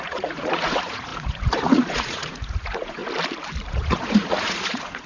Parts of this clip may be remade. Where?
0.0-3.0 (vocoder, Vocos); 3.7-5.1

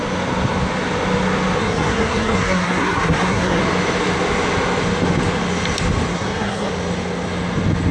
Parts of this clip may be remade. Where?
1.6-3.6 (codec, SNAC); 6.1-6.7

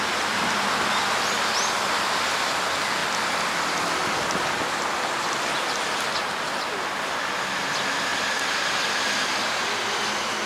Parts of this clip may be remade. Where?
none

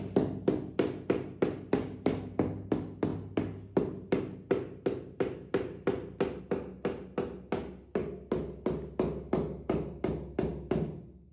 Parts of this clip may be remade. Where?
none

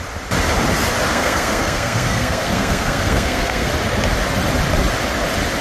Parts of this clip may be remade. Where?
1.1-3.7 (codec, SNAC)